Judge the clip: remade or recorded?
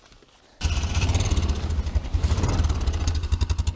recorded